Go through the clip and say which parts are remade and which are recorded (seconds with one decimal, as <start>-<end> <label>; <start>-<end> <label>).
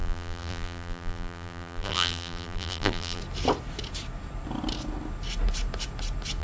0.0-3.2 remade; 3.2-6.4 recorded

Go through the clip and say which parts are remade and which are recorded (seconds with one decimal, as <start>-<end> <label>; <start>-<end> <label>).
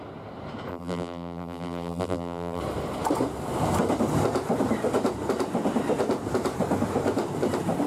0.0-0.7 recorded; 0.7-2.6 remade; 2.6-7.9 recorded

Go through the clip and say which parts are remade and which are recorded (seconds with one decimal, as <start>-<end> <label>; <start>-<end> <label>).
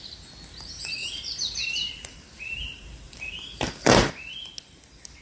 0.0-1.0 recorded; 1.0-4.1 remade; 4.1-5.2 recorded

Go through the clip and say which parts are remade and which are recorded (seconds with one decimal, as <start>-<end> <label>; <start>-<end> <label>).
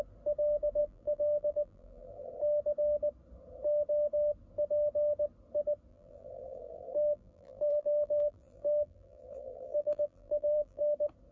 0.0-0.8 recorded; 0.8-2.3 remade; 2.3-5.9 recorded; 5.9-10.8 remade; 10.8-11.3 recorded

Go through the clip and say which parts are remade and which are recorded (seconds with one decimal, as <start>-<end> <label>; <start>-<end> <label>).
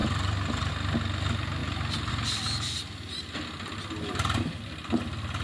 0.0-0.7 remade; 0.7-1.6 recorded; 1.6-2.1 remade; 2.1-5.4 recorded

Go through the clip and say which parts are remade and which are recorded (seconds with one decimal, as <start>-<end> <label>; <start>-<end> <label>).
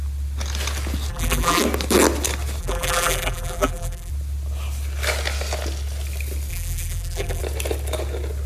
0.0-1.1 recorded; 1.1-1.6 remade; 1.6-2.6 recorded; 2.6-4.1 remade; 4.1-6.5 recorded; 6.5-7.4 remade; 7.4-8.5 recorded